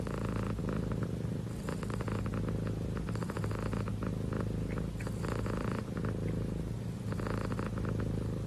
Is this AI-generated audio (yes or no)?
no